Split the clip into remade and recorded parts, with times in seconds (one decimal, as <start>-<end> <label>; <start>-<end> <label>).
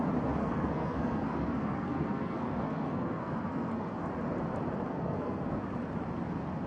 0.0-0.4 recorded; 0.4-4.1 remade; 4.1-4.9 recorded; 4.9-5.6 remade; 5.6-6.7 recorded